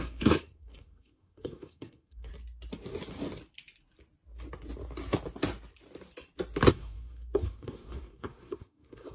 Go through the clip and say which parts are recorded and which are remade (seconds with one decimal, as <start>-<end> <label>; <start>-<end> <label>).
0.0-2.3 remade; 2.3-6.7 recorded; 6.7-9.1 remade